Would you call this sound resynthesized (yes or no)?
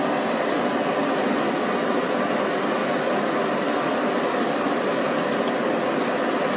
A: no